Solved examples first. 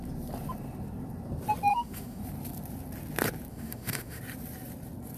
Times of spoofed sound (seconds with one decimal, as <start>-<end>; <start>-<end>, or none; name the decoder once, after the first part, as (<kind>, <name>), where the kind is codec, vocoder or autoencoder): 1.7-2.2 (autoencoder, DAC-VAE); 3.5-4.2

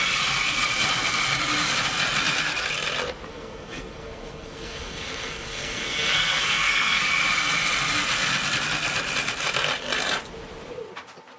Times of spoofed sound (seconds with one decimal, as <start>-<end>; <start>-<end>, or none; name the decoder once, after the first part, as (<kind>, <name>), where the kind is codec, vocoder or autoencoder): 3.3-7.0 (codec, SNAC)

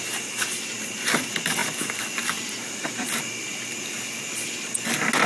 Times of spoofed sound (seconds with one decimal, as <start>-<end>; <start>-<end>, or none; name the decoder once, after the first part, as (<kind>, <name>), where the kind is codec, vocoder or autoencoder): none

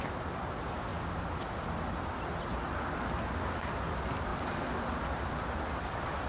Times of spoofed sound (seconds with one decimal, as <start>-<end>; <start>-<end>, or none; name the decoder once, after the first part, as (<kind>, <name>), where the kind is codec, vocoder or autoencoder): none